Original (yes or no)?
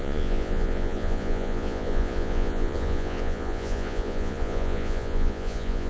no